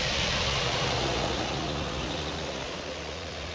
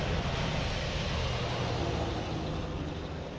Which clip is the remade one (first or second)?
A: first